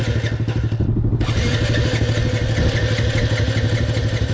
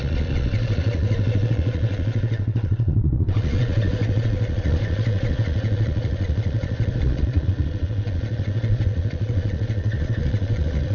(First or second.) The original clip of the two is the first